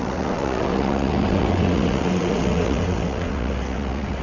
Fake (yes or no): yes